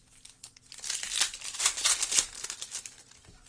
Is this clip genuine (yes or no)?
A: no